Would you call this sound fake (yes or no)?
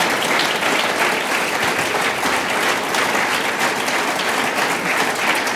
no